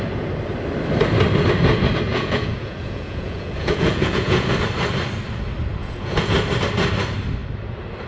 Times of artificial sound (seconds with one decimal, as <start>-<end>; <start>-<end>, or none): 2.1-4.5; 5.8-6.3